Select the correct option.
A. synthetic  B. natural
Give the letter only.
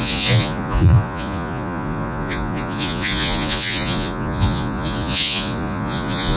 A